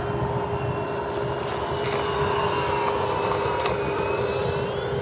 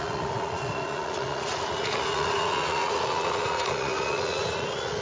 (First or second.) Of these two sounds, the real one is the first